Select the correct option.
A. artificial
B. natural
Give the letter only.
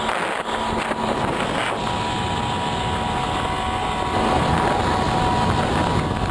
B